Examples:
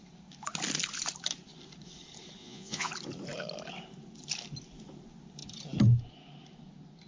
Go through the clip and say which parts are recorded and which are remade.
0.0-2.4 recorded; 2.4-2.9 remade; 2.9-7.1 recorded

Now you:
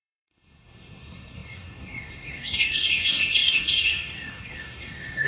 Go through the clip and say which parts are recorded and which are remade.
0.0-5.3 remade

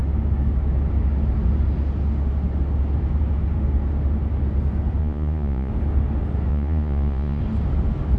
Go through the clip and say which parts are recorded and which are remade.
0.0-5.0 recorded; 5.0-5.7 remade; 5.7-6.5 recorded; 6.5-7.4 remade; 7.4-8.2 recorded

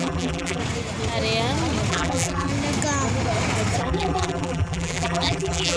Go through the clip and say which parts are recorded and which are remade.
0.0-0.6 remade; 0.6-1.9 recorded; 1.9-2.5 remade; 2.5-3.8 recorded; 3.8-5.8 remade